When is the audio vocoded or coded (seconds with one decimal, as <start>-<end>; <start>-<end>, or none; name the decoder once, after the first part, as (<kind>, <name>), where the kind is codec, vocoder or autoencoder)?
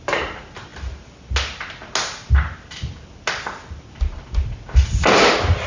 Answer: none